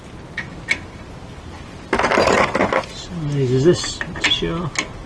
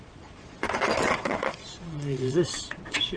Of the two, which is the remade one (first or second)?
second